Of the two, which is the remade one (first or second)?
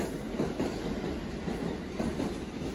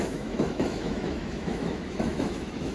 second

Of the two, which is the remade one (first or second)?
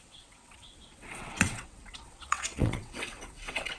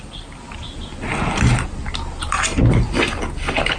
first